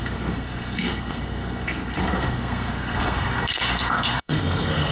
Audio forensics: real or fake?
fake